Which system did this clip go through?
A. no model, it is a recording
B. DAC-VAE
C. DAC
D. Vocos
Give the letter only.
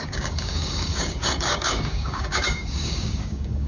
C